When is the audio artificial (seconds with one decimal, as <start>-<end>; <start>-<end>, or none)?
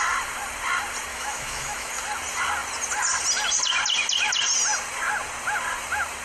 1.1-1.9